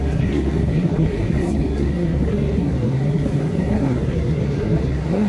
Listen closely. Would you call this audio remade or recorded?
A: remade